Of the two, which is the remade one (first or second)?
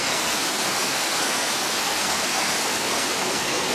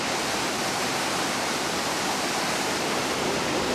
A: first